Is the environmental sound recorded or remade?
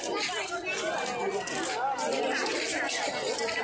recorded